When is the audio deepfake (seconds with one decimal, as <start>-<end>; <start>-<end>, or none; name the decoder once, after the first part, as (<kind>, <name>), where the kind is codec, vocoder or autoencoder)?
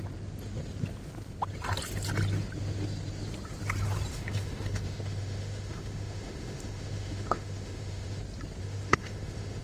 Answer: 4.1-8.2 (autoencoder, DAC-VAE); 8.6-9.6